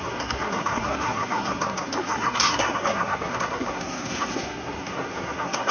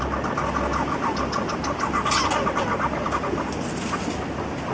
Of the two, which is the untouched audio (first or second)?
second